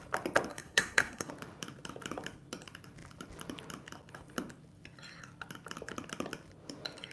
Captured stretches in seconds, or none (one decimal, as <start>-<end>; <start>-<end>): 0.0-0.5; 1.3-7.1